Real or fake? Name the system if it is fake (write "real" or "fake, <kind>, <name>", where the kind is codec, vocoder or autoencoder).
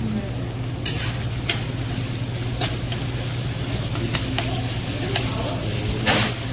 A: real